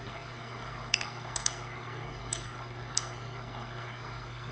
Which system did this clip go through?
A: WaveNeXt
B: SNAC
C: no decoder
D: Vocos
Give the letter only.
B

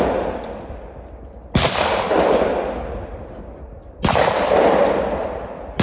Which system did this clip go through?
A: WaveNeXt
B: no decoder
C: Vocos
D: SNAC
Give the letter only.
B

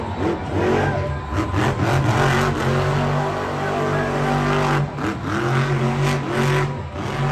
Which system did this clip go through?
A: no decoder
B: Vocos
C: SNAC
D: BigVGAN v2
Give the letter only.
A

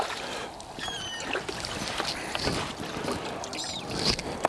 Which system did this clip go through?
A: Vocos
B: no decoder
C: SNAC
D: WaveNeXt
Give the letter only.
B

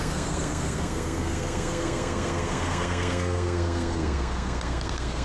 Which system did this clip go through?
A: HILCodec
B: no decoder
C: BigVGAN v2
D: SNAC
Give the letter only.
D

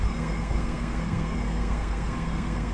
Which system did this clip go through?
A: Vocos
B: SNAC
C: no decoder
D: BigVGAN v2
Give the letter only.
B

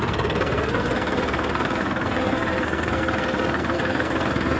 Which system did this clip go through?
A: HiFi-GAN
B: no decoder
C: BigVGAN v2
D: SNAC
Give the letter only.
D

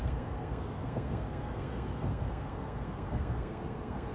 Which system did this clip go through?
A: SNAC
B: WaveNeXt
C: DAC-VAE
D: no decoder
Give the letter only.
A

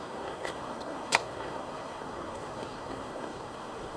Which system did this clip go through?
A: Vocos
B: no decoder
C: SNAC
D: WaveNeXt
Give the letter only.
C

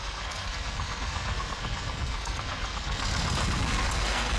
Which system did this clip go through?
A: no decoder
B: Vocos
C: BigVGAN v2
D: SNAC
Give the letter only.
D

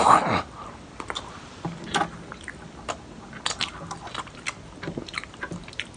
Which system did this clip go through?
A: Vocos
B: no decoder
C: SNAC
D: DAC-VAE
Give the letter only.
B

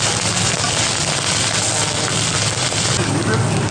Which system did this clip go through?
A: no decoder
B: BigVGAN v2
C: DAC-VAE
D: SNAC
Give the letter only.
A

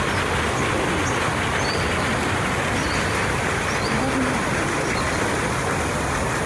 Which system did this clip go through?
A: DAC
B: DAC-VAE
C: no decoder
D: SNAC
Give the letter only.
C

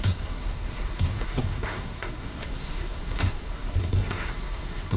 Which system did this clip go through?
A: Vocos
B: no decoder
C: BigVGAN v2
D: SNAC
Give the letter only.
D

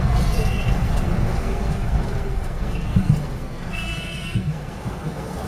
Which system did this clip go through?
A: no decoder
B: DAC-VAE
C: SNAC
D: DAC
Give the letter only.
C